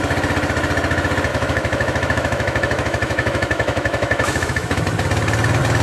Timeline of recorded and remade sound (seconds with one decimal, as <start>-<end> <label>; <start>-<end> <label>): 0.0-1.3 recorded; 1.3-4.8 remade; 4.8-5.8 recorded